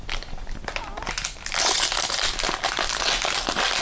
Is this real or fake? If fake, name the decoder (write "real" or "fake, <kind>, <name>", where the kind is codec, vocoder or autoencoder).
real